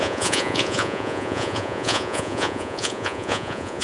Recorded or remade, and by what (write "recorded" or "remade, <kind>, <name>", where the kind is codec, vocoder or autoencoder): remade, vocoder, Vocos